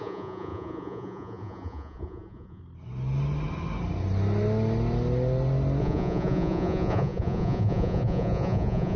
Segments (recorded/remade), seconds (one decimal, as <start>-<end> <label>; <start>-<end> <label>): 0.0-2.6 remade; 2.6-5.8 recorded; 5.8-9.0 remade